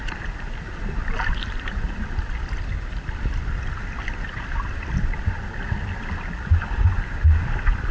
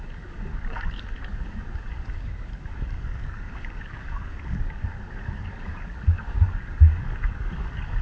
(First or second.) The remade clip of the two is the second